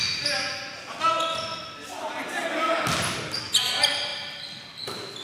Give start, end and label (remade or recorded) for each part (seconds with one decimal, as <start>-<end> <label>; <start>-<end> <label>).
0.0-5.2 recorded